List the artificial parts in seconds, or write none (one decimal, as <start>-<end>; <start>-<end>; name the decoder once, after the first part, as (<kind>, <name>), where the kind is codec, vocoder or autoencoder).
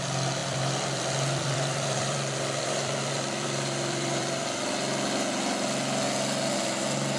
0.4-4.7 (vocoder, BigVGAN v2)